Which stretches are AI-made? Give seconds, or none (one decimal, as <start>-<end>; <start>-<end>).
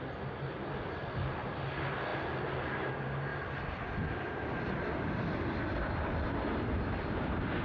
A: none